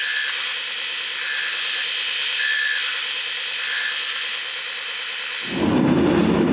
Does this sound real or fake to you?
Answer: real